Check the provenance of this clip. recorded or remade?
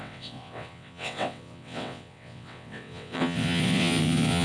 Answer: remade